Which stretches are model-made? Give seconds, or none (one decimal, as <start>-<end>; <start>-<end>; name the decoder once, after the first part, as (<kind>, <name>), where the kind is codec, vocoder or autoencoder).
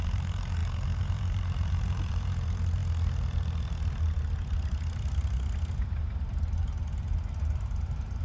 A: 0.0-2.8 (vocoder, BigVGAN v2); 5.8-8.2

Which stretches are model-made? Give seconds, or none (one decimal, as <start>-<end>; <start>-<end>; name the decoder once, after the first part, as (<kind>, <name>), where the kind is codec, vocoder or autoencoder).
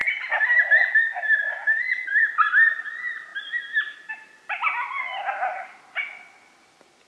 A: none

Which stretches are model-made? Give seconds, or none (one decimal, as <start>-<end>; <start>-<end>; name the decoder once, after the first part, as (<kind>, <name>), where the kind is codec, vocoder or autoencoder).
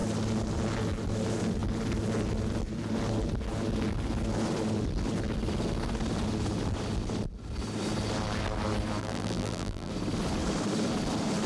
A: 9.0-9.9 (vocoder, BigVGAN v2)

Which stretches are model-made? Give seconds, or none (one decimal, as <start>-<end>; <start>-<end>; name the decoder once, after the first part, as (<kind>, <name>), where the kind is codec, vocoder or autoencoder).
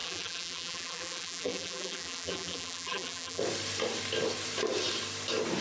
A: 0.0-3.4 (vocoder, BigVGAN v2)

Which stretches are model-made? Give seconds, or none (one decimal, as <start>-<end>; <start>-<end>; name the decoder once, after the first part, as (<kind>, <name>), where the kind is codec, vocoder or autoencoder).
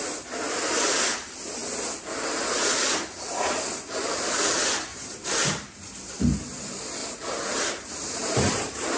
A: 3.9-4.5 (vocoder, BigVGAN v2); 4.9-6.2; 7.0-9.0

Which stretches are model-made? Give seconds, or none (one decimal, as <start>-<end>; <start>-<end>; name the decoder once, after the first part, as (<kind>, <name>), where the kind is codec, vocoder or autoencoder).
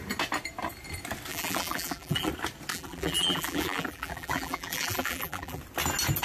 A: 1.3-2.3 (vocoder, BigVGAN v2); 2.7-5.6